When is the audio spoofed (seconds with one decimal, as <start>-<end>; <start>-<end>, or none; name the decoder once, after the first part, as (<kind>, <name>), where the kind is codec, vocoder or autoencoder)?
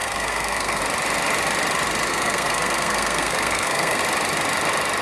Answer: 0.0-0.8 (codec, SNAC); 2.1-4.0